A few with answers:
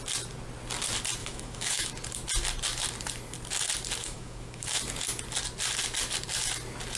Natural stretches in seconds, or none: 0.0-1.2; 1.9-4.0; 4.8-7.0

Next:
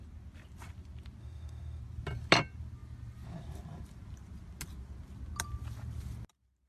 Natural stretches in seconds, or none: 0.0-1.2; 1.8-6.7

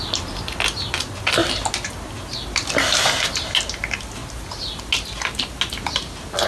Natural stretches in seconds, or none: 0.0-6.5

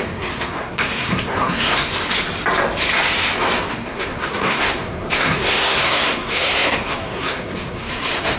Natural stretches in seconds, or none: 1.9-3.7

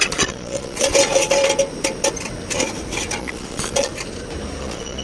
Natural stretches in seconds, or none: 0.9-3.2; 3.9-4.6

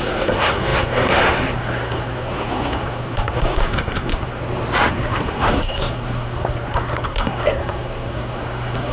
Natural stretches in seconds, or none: 4.4-4.9